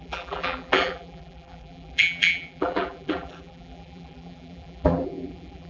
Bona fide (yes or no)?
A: no